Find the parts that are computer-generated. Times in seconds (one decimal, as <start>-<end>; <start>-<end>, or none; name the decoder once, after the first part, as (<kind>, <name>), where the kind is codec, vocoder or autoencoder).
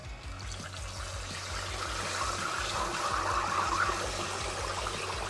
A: none